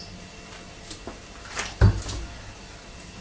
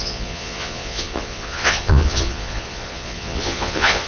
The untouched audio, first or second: first